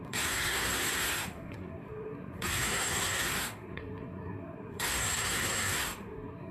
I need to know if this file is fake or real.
fake